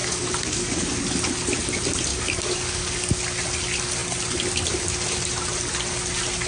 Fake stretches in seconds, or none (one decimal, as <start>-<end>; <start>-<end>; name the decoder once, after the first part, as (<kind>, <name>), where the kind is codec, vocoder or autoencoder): 0.0-1.2 (codec, DAC); 2.1-3.2